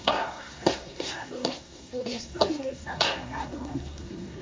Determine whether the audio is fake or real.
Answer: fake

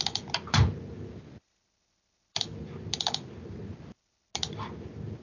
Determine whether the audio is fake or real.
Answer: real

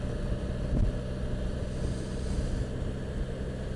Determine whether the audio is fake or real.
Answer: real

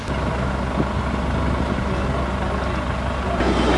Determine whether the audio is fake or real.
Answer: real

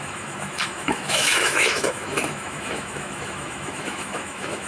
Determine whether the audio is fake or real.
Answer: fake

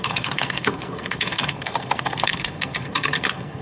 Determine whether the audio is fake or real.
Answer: fake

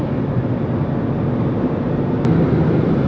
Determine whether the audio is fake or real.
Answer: real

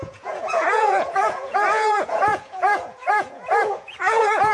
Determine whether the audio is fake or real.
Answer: fake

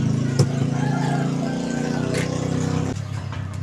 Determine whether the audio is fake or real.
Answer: real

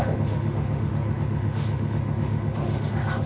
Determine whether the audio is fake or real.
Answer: fake